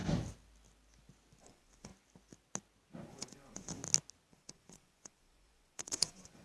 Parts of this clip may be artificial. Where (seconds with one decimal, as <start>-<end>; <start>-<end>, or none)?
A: 1.4-1.9; 3.1-3.8; 4.3-6.4